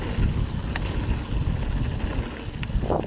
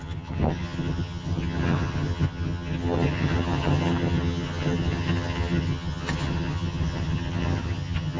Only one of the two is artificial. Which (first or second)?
second